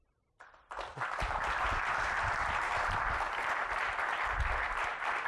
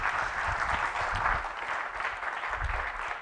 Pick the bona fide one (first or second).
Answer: second